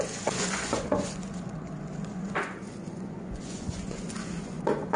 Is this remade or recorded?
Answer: remade